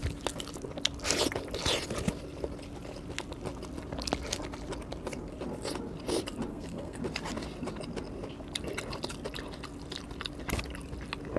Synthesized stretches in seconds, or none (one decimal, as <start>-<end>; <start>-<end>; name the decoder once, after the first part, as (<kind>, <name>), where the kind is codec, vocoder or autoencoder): 6.5-7.0 (codec, SNAC)